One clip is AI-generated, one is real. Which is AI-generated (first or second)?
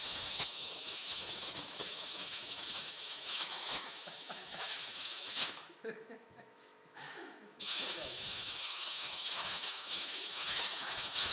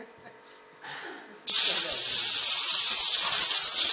first